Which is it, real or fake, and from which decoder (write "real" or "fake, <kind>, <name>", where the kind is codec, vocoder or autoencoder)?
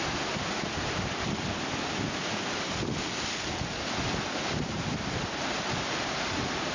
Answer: real